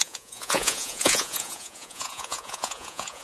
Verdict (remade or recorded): remade